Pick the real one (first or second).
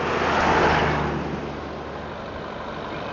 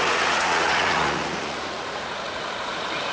first